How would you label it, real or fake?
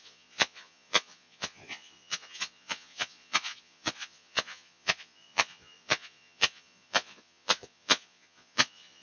fake